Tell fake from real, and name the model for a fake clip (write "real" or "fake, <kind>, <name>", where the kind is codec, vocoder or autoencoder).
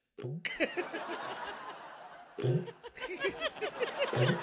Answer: real